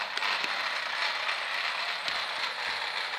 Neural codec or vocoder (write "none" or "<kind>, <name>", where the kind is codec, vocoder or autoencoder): none